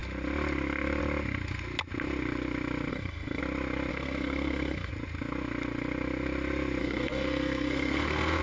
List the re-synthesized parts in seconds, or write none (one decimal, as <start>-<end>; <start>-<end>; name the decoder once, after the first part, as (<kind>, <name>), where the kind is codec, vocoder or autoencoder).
2.9-3.4 (codec, SNAC); 3.9-4.9; 6.8-8.4